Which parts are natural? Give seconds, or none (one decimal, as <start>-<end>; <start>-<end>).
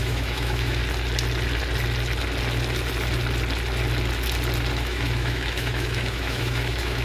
0.8-4.7